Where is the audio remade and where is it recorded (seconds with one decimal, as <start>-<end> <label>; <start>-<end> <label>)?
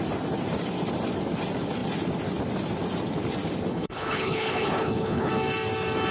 0.0-3.7 recorded; 3.7-5.3 remade; 5.3-6.1 recorded